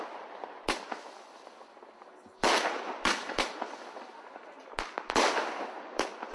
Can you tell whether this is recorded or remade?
recorded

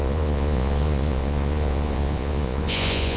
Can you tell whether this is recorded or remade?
remade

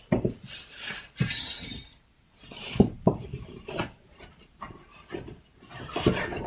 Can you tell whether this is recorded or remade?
remade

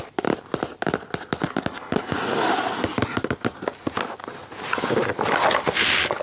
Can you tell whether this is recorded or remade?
recorded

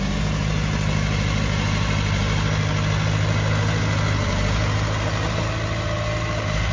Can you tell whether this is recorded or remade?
recorded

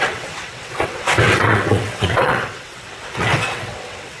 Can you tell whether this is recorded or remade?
remade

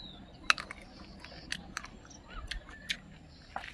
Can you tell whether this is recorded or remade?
recorded